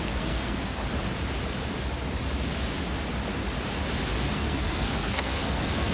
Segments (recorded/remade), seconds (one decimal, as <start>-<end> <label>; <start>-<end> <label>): 0.0-0.8 remade; 0.8-4.2 recorded; 4.2-5.9 remade